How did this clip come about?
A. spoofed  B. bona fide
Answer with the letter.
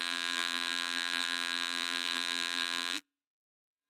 A